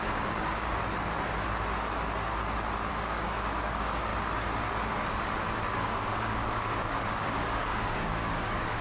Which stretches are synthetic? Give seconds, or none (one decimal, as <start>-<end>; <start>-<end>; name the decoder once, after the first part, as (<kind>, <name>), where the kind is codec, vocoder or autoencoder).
0.0-0.8 (codec, DAC); 2.9-4.1; 5.8-8.8

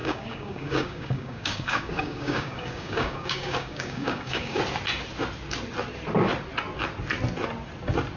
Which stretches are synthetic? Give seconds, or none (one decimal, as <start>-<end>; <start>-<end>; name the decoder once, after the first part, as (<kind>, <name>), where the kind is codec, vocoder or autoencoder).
0.0-4.6 (codec, DAC)

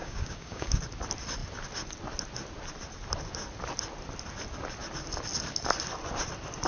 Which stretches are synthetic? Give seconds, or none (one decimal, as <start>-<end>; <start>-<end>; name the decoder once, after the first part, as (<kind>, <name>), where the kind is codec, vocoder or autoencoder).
0.0-0.8 (codec, DAC)

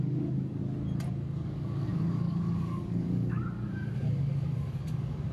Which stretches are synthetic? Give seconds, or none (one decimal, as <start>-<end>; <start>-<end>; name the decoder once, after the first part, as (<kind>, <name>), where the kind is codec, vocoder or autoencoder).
0.0-0.6 (codec, DAC); 1.1-5.3